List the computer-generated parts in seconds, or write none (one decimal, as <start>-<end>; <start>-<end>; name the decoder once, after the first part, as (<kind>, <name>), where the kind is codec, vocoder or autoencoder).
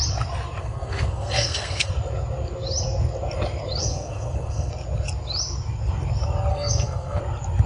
0.6-1.9 (codec, SNAC); 3.8-4.7; 6.5-7.2